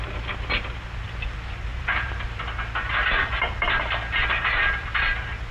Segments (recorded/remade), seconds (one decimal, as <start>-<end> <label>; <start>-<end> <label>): 0.0-1.7 recorded; 1.7-2.4 remade; 2.4-5.5 recorded